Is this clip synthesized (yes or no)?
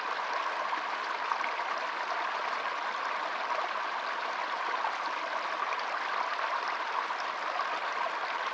no